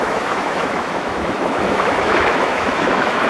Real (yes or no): no